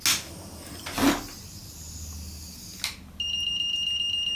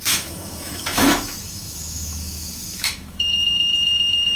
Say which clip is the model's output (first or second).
second